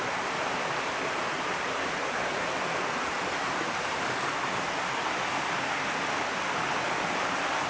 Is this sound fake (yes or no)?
no